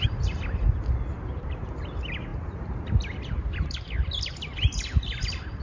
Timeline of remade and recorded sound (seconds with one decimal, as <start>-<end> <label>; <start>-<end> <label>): 0.0-5.6 recorded